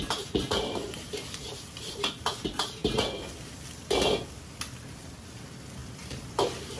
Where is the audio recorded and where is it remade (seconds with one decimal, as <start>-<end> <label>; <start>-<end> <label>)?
0.0-2.8 remade; 2.8-4.9 recorded; 4.9-6.8 remade